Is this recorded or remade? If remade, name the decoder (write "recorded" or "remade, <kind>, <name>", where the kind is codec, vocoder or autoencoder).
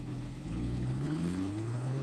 remade, codec, HILCodec